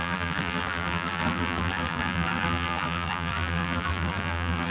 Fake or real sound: fake